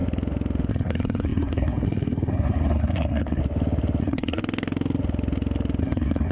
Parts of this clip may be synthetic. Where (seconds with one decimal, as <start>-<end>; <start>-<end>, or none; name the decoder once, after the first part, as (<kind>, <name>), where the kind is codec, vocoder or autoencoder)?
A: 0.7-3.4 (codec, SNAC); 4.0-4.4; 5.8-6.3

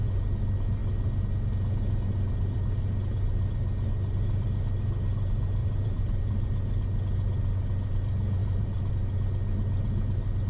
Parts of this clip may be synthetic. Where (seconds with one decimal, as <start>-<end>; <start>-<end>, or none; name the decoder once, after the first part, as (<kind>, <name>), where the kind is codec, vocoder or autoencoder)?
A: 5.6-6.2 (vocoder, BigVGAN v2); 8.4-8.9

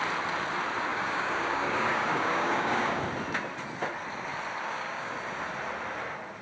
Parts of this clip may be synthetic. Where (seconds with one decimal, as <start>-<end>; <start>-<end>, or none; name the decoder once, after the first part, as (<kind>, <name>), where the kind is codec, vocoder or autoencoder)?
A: 0.9-3.0 (codec, DAC); 4.6-5.1

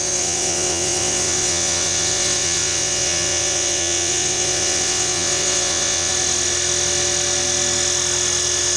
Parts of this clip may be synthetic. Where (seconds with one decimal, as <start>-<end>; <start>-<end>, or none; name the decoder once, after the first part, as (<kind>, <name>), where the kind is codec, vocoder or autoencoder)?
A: 0.0-6.1 (vocoder, WaveNeXt)

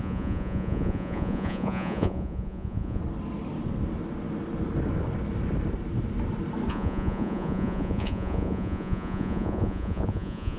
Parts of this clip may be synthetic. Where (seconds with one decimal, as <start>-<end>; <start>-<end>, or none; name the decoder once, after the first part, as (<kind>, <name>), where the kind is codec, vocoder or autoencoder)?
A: 0.0-3.0 (vocoder, Vocos); 6.7-10.6

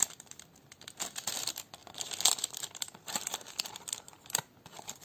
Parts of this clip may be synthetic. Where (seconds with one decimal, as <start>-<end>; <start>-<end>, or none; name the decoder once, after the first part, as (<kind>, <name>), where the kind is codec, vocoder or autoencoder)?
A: none